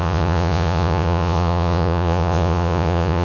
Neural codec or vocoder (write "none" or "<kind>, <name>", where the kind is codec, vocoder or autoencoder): vocoder, Vocos